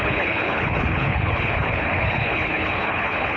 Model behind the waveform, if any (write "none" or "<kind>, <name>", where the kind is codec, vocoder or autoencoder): codec, HILCodec